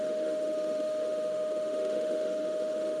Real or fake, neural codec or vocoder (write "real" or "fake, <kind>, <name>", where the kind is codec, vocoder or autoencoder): fake, autoencoder, DAC-VAE